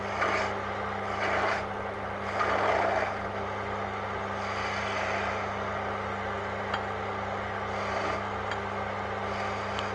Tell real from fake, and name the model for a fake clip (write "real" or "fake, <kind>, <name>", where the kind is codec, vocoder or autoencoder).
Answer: real